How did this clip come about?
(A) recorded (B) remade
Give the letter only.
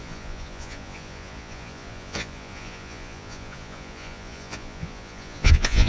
B